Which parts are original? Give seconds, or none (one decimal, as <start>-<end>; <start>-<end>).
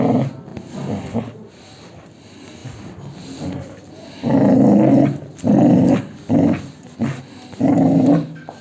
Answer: 0.0-8.6